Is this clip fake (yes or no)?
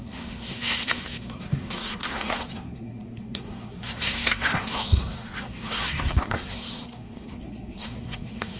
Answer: yes